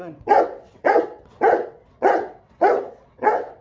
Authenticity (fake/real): fake